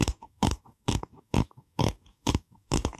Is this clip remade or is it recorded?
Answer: remade